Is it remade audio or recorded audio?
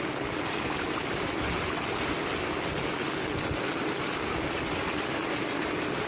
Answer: recorded